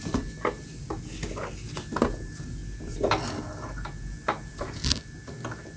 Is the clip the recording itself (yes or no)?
yes